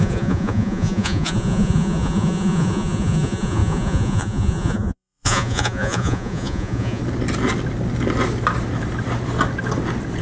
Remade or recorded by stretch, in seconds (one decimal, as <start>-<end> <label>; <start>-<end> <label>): 0.0-7.0 remade; 7.0-10.2 recorded